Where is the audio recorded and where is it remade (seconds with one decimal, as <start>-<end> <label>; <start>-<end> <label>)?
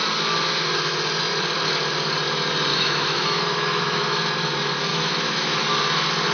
0.0-2.7 recorded; 2.7-4.2 remade; 4.2-4.9 recorded; 4.9-5.6 remade; 5.6-6.3 recorded